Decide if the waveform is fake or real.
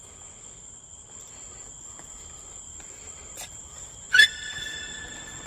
fake